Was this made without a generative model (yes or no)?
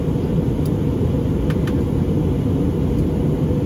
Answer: yes